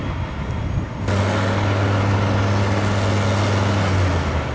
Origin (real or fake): real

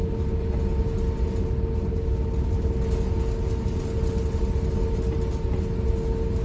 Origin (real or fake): real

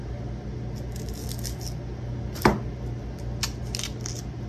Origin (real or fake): real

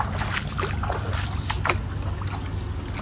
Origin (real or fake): real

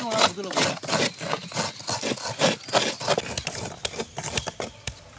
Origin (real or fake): real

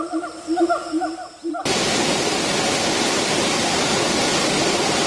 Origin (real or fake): real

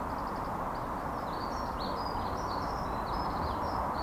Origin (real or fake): real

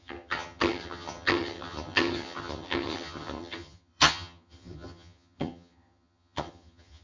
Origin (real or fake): fake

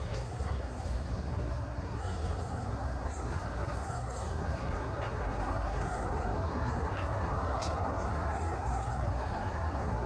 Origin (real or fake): fake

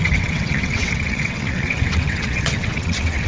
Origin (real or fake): fake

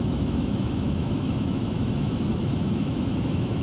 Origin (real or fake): fake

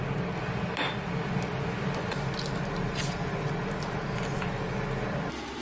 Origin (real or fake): real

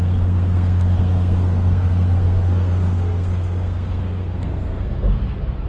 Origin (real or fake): fake